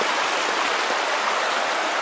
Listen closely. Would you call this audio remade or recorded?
recorded